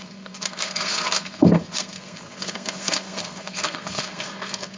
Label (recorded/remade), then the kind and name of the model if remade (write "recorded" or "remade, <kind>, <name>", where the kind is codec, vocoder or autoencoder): remade, codec, SNAC